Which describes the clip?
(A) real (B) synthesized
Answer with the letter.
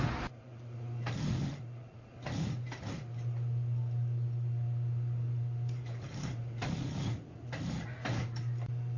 A